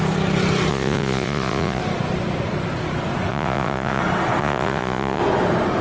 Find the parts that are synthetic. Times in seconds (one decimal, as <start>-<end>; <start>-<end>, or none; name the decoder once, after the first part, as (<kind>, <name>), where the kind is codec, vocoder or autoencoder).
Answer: 0.7-1.8 (vocoder, Vocos); 3.3-4.0; 4.4-5.2